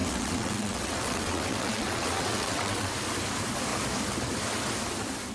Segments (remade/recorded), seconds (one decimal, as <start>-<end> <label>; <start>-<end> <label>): 0.0-2.9 remade; 2.9-5.3 recorded